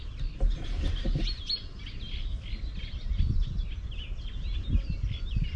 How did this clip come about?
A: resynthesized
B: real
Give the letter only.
B